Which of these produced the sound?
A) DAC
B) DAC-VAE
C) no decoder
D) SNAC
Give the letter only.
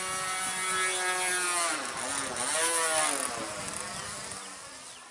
C